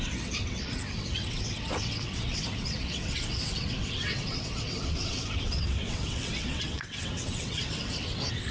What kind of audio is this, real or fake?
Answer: fake